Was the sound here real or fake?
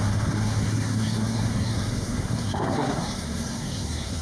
fake